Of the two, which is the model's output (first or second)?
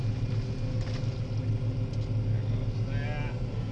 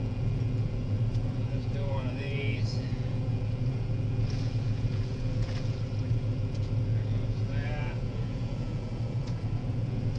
second